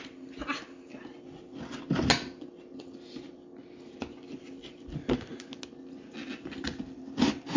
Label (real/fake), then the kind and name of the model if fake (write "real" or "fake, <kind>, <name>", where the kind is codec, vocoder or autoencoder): real